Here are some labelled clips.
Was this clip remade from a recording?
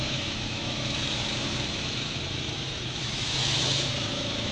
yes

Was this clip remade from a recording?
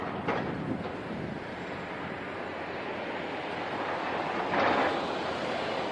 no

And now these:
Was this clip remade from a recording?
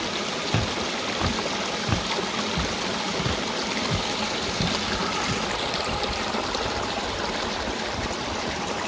no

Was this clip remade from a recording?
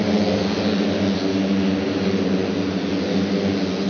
no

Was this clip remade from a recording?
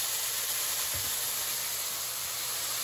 no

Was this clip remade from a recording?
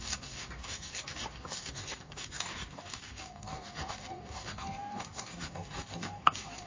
yes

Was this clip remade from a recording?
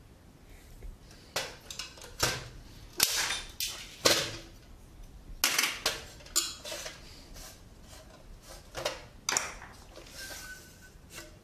no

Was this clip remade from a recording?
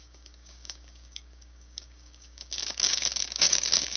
yes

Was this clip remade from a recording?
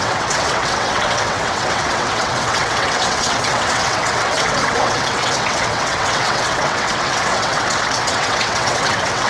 yes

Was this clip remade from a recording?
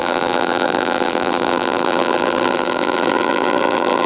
yes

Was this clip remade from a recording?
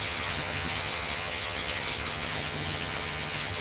yes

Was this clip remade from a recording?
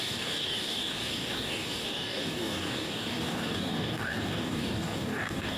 yes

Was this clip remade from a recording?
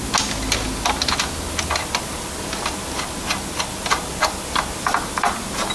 no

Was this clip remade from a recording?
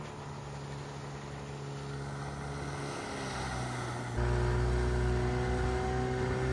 no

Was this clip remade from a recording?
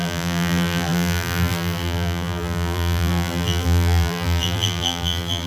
yes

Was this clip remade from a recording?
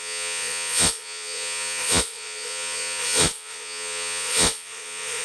yes